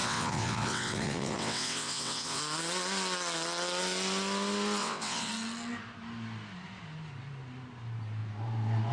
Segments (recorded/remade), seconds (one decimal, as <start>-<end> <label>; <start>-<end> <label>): 0.0-2.4 remade; 2.4-4.8 recorded; 4.8-5.3 remade; 5.3-8.9 recorded